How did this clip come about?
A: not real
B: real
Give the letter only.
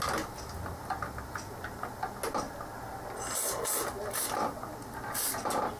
B